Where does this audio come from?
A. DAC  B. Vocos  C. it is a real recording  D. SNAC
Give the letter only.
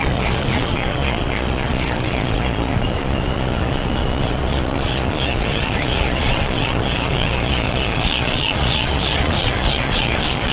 B